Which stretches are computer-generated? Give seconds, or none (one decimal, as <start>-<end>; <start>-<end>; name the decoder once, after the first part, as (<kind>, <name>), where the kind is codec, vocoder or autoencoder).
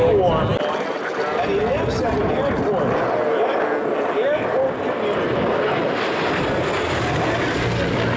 none